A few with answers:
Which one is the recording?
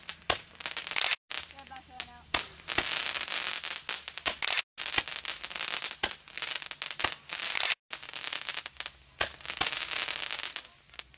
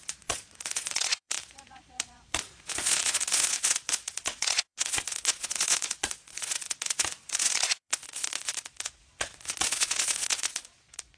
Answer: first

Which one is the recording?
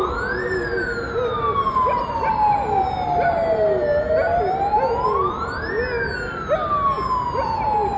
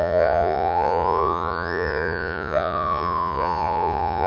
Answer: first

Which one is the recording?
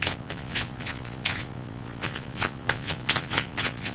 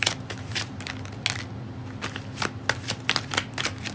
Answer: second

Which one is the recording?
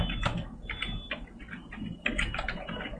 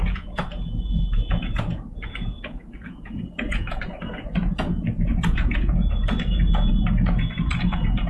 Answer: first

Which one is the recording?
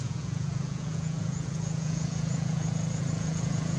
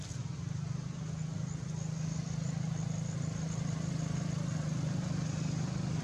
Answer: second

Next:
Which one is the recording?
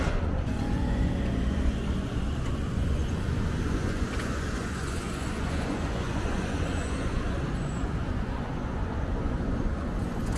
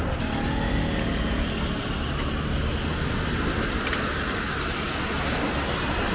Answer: second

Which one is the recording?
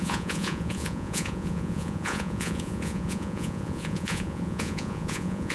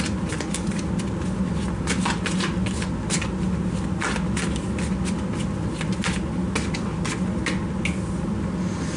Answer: second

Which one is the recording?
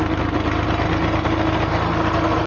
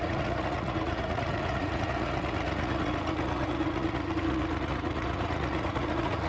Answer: first